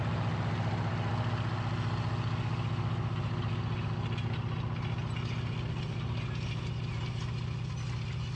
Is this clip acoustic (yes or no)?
yes